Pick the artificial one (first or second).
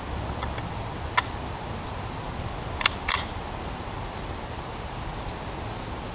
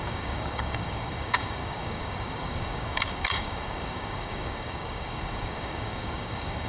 second